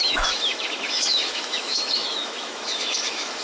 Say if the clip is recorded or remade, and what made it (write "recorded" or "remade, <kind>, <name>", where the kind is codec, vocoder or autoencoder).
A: remade, autoencoder, DAC-VAE